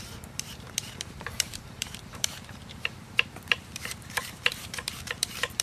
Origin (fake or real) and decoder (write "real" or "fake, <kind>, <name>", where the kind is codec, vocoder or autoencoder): fake, vocoder, BigVGAN v2